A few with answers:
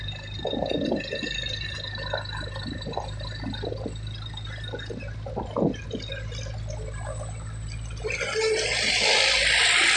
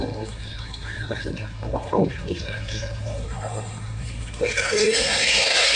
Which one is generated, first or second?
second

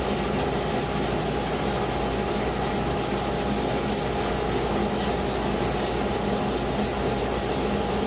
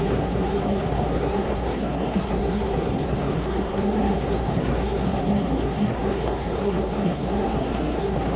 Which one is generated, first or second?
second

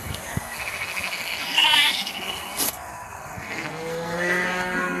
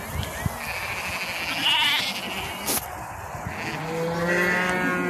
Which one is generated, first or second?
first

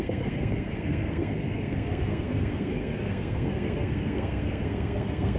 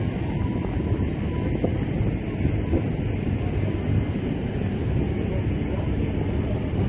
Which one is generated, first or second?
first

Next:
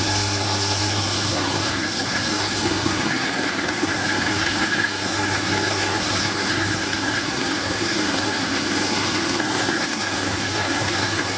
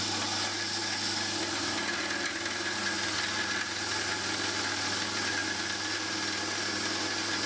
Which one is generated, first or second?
first